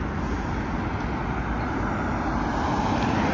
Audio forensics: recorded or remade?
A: recorded